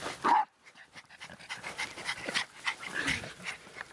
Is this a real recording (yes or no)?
yes